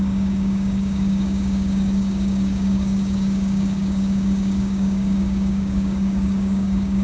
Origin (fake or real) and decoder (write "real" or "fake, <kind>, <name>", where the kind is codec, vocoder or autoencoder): fake, codec, DAC